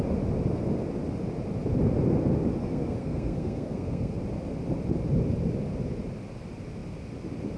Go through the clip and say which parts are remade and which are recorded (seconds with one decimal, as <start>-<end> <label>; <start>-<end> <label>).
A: 0.0-2.6 recorded; 2.6-4.2 remade; 4.2-7.6 recorded